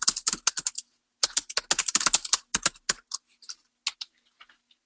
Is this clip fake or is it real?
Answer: real